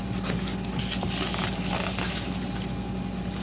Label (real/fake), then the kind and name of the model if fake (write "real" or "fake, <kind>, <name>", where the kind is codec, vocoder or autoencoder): real